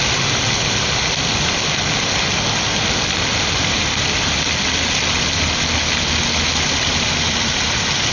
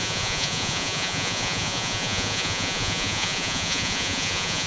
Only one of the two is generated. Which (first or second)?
second